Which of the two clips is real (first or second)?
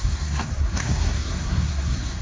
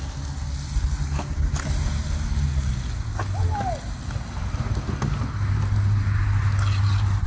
second